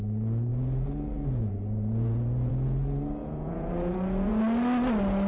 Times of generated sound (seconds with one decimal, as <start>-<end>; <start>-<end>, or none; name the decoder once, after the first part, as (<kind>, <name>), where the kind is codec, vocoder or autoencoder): 0.5-2.5 (vocoder, Vocos); 3.2-4.4